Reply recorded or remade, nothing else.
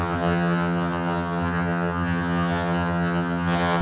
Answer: remade